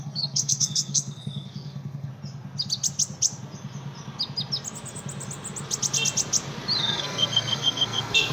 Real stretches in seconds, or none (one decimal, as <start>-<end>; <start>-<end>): 2.1-6.8